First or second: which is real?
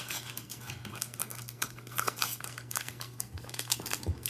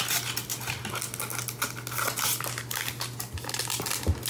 second